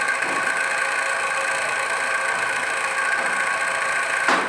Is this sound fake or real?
real